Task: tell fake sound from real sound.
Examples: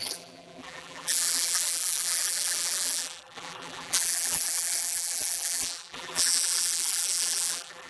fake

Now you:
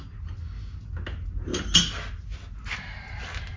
real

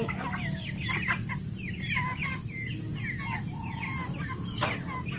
real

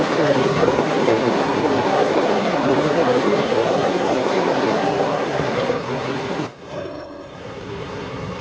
fake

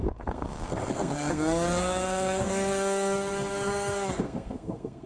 fake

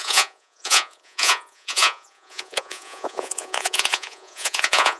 fake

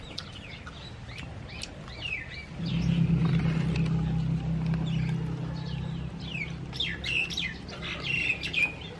real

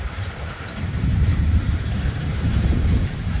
fake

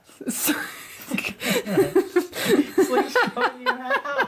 real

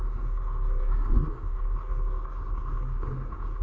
fake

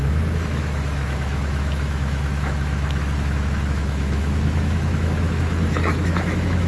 fake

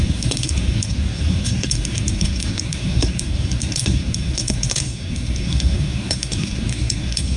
fake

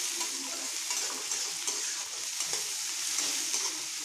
real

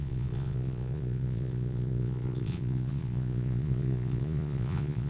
fake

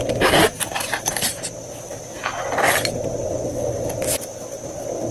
real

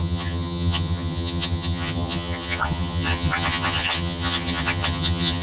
fake